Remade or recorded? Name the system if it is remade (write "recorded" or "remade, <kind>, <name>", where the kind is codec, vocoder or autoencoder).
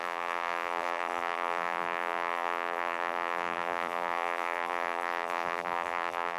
remade, vocoder, BigVGAN v2